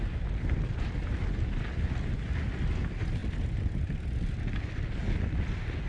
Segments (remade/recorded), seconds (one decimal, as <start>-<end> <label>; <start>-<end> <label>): 0.0-5.9 recorded